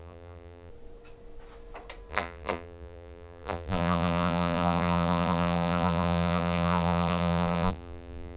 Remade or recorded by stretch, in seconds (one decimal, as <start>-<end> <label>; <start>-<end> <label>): 0.0-0.7 remade; 0.7-2.1 recorded; 2.1-8.4 remade